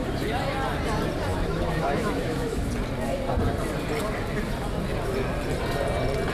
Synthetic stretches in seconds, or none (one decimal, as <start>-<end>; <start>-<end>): 1.3-2.7